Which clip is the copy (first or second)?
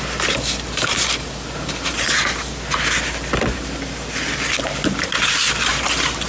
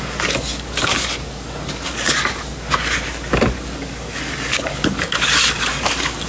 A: second